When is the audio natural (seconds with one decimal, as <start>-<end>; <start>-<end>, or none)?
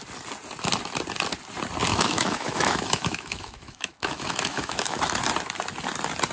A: 0.0-1.9; 5.0-6.3